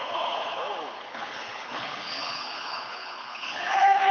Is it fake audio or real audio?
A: fake